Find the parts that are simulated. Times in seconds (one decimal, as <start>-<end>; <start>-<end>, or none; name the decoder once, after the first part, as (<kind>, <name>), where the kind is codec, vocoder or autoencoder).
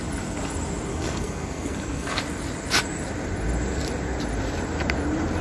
0.9-2.2 (codec, SNAC)